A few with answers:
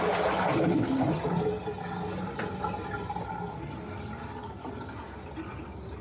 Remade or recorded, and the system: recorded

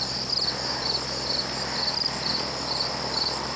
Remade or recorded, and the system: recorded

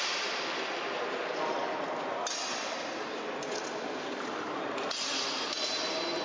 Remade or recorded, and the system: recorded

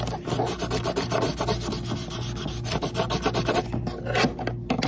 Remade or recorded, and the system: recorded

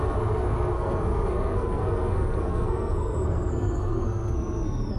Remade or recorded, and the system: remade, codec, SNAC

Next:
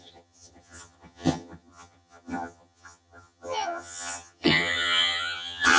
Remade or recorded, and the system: remade, vocoder, HiFi-GAN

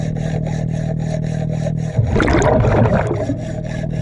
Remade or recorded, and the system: recorded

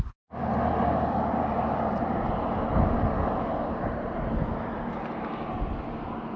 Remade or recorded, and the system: recorded